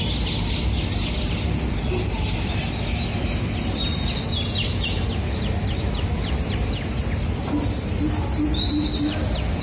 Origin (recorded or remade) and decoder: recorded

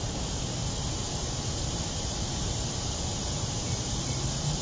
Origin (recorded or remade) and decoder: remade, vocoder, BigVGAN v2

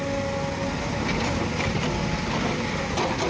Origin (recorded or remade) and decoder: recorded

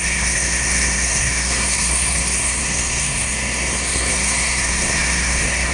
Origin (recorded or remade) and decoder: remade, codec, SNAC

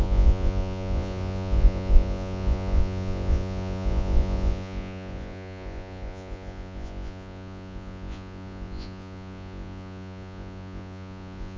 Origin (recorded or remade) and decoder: remade, vocoder, Vocos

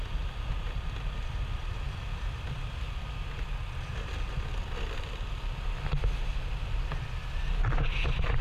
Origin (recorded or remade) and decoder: recorded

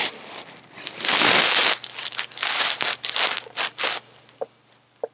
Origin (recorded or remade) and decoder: recorded